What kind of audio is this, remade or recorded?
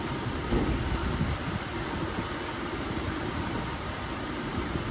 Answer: remade